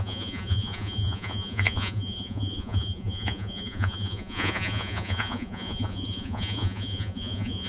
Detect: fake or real fake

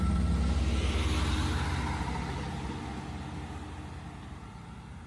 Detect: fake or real real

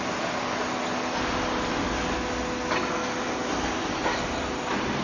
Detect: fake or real real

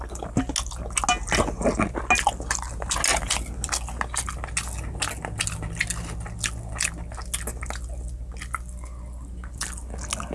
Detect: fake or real real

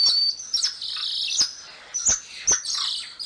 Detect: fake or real real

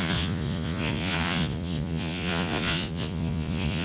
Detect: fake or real fake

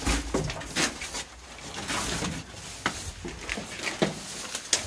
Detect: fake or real real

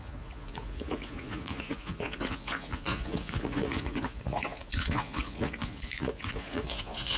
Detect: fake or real fake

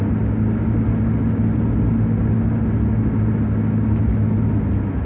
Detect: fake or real real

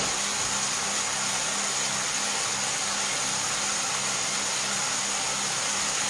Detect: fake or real real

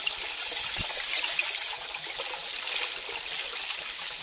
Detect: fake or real real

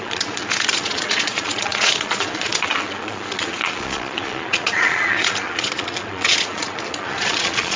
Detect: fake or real fake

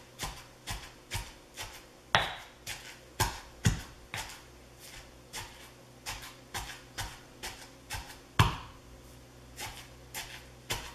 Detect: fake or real real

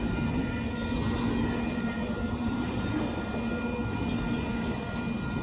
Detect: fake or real real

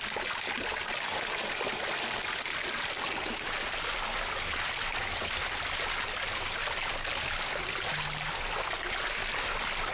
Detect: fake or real real